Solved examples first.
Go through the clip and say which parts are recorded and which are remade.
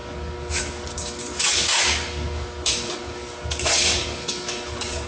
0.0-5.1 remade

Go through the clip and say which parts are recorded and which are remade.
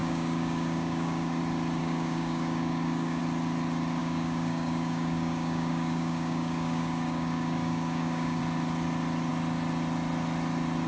0.0-1.4 remade; 1.4-1.8 recorded; 1.8-3.2 remade; 3.2-4.0 recorded; 4.0-8.4 remade; 8.4-10.9 recorded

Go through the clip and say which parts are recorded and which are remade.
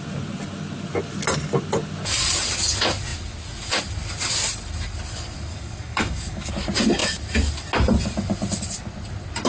0.0-5.5 recorded; 5.5-6.5 remade; 6.5-9.5 recorded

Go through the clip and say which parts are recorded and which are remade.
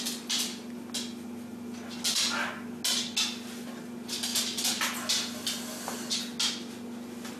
0.0-7.4 recorded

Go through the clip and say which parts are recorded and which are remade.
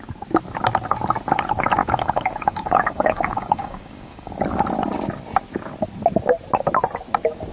0.0-1.8 recorded; 1.8-4.3 remade; 4.3-7.5 recorded